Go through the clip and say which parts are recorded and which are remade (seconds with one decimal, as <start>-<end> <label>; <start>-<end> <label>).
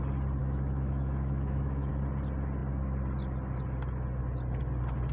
0.0-0.4 recorded; 0.4-1.9 remade; 1.9-5.1 recorded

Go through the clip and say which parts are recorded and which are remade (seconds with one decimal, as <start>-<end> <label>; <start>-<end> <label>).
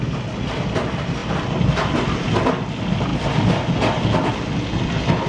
0.0-5.3 recorded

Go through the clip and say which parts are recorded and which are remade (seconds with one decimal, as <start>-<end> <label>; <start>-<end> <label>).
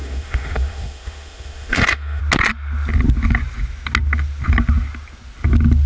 0.0-2.2 remade; 2.2-5.9 recorded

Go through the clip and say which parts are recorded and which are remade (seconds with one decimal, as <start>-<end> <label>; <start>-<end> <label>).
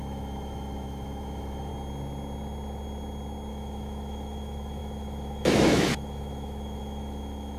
0.0-1.7 remade; 1.7-3.5 recorded; 3.5-7.6 remade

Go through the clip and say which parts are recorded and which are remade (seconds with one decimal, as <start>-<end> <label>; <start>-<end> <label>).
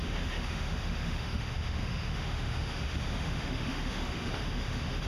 0.0-5.1 remade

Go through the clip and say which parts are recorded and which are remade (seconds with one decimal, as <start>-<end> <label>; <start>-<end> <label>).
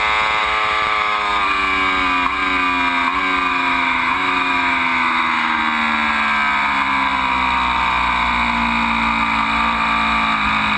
0.0-0.4 recorded; 0.4-1.2 remade; 1.2-3.5 recorded; 3.5-5.6 remade; 5.6-10.8 recorded